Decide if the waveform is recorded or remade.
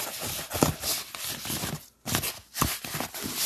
recorded